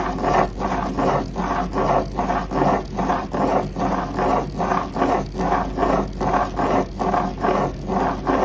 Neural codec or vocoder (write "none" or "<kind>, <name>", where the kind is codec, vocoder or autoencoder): none